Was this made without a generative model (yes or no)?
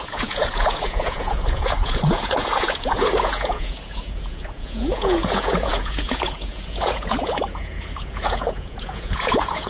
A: no